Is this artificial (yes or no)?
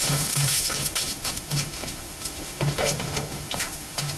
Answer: yes